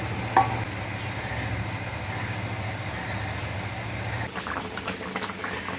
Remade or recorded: recorded